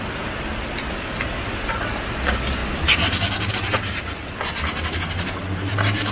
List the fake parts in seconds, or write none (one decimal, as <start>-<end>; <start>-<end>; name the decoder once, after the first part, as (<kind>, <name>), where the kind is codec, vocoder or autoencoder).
2.6-3.5 (vocoder, BigVGAN v2)